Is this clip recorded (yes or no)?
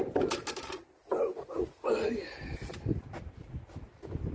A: yes